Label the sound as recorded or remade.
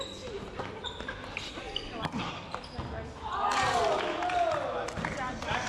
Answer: recorded